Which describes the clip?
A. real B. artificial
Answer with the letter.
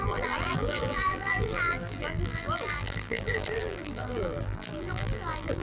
B